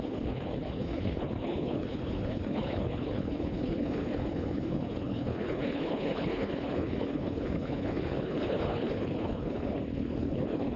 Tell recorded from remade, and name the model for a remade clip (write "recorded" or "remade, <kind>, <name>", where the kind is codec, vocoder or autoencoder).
remade, codec, HILCodec